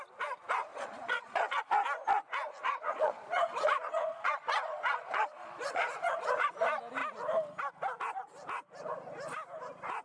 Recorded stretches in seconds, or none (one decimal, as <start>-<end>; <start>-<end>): 0.0-0.7; 1.6-2.6; 6.5-10.0